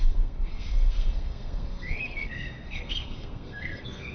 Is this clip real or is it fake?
fake